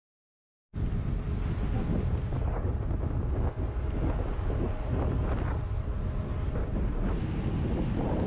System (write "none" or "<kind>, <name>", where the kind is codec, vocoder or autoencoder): none